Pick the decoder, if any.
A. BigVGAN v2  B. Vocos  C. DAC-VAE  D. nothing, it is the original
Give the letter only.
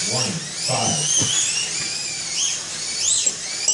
D